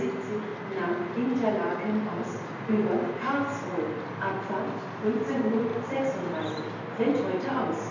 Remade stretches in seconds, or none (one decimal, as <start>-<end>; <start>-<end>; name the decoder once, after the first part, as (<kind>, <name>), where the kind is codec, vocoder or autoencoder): none